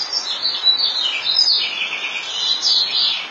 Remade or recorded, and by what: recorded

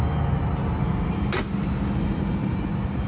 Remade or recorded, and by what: recorded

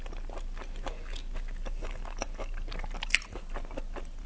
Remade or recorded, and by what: recorded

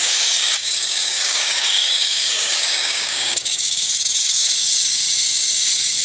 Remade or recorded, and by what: remade, codec, DAC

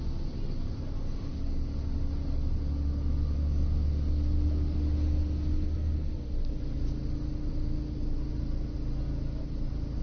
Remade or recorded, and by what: recorded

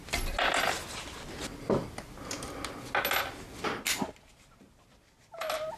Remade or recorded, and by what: recorded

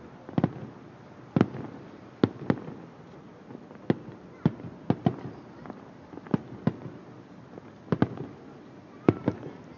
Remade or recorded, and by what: recorded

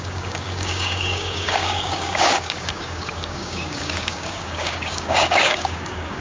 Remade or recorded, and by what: remade, codec, DAC